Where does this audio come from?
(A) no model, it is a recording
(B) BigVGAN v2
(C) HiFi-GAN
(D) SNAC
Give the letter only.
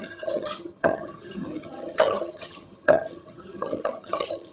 C